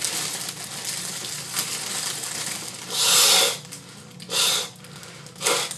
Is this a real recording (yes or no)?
yes